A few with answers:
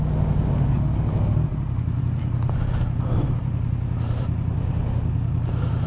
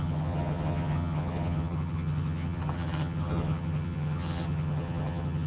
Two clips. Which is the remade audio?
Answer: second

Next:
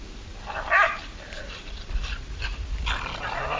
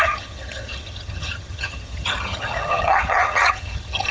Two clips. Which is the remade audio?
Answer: second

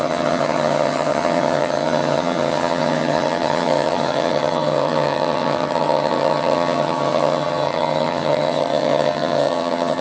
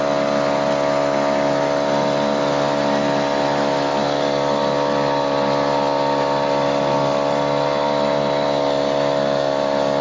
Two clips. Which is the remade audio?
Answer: first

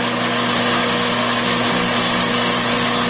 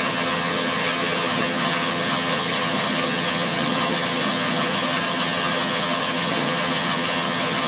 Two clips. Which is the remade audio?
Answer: second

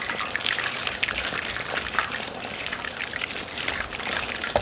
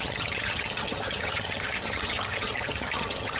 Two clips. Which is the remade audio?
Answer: second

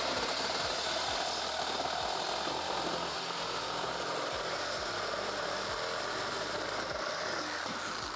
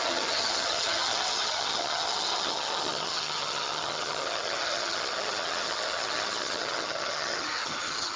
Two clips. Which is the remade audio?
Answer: second